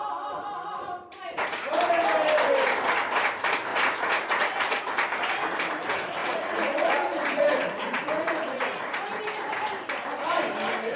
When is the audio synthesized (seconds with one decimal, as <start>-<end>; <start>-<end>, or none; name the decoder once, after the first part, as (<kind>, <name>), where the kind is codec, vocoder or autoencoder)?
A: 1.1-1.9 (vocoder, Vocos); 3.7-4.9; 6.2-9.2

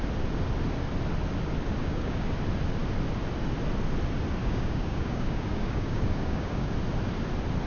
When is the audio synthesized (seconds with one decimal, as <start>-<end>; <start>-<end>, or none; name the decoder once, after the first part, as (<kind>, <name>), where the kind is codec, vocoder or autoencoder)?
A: 1.8-2.3 (codec, DAC); 4.4-6.7

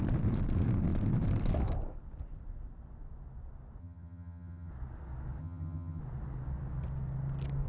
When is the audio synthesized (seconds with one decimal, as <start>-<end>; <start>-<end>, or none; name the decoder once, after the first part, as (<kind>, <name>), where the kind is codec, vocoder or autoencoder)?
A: 3.8-4.7 (vocoder, HiFi-GAN); 5.4-6.0

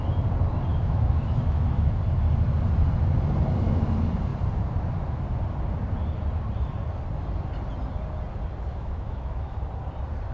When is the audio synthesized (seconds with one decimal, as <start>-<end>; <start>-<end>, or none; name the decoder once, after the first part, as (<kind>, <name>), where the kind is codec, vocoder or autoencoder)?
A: 0.7-2.0 (autoencoder, DAC-VAE); 8.7-9.6

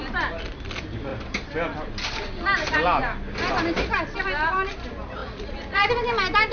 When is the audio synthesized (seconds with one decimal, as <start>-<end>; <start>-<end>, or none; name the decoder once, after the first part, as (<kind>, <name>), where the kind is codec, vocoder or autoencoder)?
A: 5.2-5.9 (vocoder, Vocos)

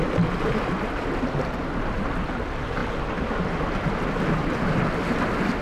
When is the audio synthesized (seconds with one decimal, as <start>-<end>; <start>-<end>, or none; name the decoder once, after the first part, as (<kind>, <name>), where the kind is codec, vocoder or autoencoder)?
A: none

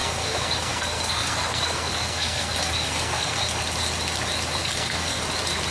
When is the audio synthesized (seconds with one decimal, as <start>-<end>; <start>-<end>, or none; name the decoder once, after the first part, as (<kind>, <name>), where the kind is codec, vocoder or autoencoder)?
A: 0.0-3.4 (codec, SNAC); 4.6-5.2